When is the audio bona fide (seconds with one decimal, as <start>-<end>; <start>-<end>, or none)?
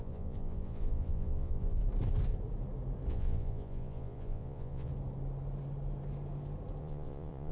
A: 1.8-3.1; 4.9-6.8